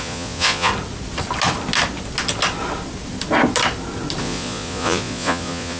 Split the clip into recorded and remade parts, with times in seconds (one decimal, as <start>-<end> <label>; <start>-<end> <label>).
0.0-0.7 remade; 0.7-4.2 recorded; 4.2-5.8 remade